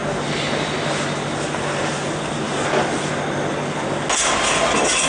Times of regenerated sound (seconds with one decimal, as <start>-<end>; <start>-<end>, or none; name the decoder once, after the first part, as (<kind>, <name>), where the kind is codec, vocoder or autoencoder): none